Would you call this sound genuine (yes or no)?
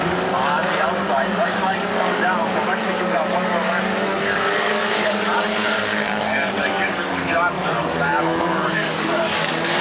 no